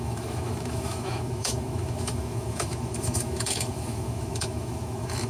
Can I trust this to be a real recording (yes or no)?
no